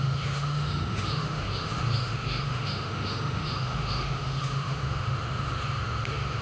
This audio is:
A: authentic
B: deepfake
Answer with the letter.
B